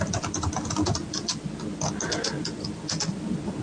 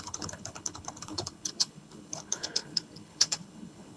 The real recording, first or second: first